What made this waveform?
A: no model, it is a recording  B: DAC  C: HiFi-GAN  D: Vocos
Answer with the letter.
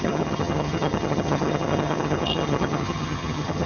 C